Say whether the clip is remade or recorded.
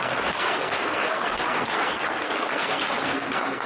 remade